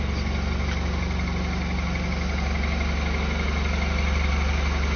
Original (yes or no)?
yes